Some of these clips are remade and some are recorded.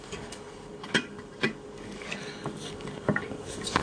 remade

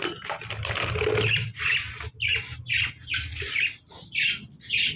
recorded